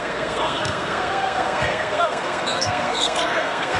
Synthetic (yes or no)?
yes